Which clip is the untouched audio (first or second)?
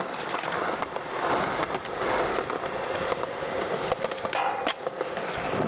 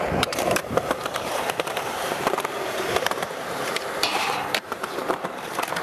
first